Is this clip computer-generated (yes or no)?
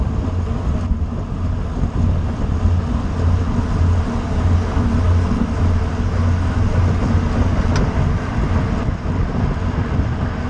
no